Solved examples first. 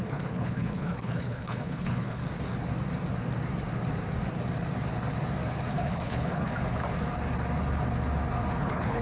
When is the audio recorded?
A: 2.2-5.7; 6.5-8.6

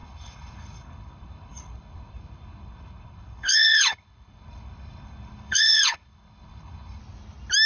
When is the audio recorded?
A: 7.0-7.7

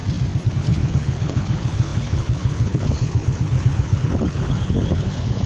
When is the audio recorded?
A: 0.0-0.5